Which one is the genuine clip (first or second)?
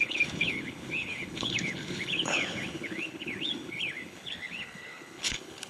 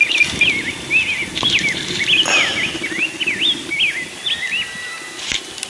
second